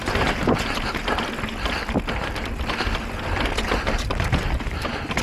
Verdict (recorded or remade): recorded